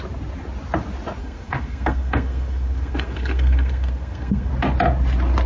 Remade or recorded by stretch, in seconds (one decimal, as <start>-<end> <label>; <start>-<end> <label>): 0.0-1.2 recorded; 1.2-4.5 remade; 4.5-5.5 recorded